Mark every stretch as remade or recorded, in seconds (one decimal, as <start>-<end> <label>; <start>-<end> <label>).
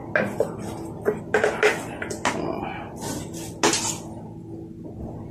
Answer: 0.0-5.3 recorded